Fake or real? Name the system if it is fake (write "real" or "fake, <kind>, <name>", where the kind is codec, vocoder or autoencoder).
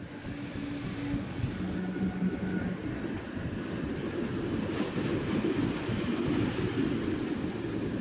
real